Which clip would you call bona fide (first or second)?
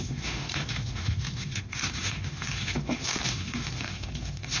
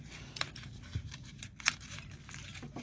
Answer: second